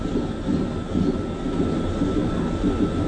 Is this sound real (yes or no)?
yes